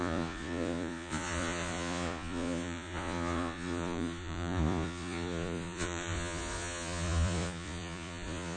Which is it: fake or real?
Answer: fake